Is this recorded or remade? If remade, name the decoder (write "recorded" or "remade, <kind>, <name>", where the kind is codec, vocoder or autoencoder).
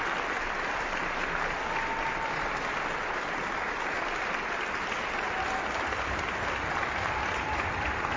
recorded